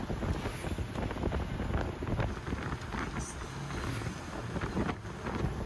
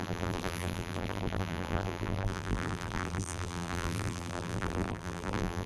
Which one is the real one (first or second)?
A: first